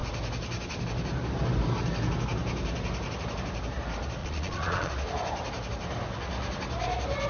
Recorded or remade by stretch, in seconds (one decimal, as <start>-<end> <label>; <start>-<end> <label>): 0.0-4.2 recorded; 4.2-4.9 remade; 4.9-7.3 recorded